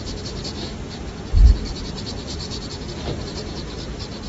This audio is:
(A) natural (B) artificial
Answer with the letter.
A